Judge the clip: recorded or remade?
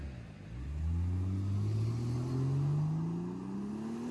recorded